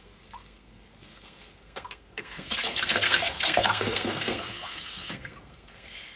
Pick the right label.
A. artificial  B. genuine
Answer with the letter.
A